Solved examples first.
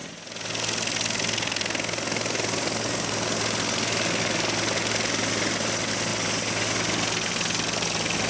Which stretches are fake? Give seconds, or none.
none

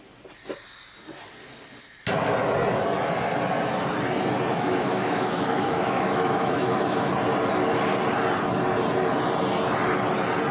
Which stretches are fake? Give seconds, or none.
4.5-7.1 (autoencoder, DAC-VAE)

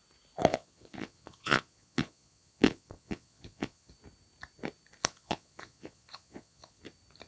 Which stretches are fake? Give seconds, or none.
0.5-3.9 (vocoder, Vocos); 5.0-6.8

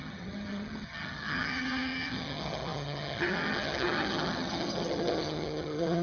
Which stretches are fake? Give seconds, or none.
0.0-6.0 (vocoder, HiFi-GAN)

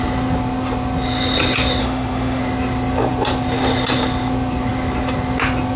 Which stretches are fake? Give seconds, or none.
1.8-2.4 (autoencoder, DAC-VAE)

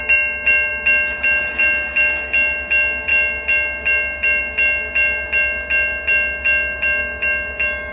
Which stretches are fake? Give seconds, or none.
none

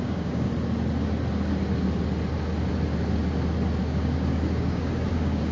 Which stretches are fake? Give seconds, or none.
0.0-0.5 (codec, DAC); 3.8-5.5

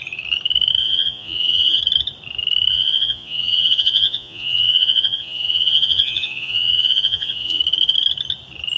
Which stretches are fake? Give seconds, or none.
0.8-1.8 (vocoder, Vocos); 2.7-7.6